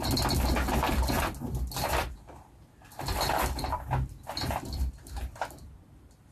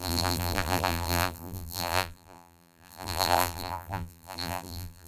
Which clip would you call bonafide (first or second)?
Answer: first